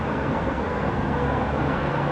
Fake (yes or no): yes